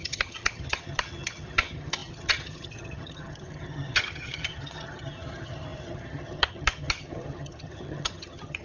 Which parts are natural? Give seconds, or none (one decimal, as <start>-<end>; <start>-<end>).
none